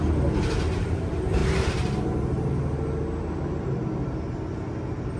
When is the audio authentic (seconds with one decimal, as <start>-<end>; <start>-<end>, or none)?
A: 0.0-5.2